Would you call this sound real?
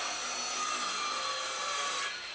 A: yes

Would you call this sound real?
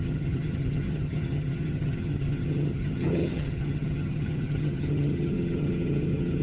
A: no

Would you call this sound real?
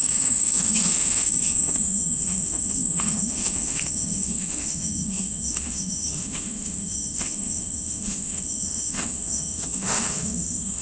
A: no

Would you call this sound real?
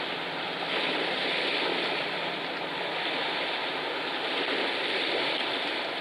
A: yes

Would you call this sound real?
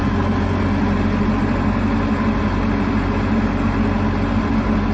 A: yes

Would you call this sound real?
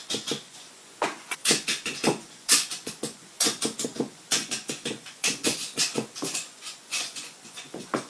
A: no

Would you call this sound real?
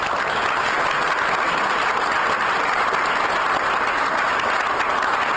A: yes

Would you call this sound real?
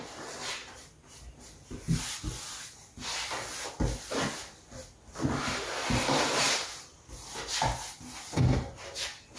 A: yes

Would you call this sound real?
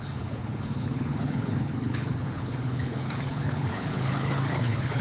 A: no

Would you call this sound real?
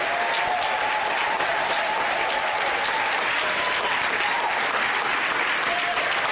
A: yes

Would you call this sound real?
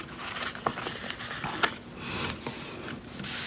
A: yes